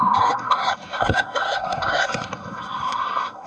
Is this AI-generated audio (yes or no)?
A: yes